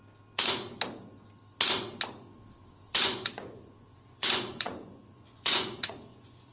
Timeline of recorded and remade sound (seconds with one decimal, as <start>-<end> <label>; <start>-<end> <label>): 0.0-2.6 recorded; 2.6-6.5 remade